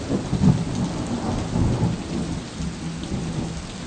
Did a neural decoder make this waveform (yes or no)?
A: no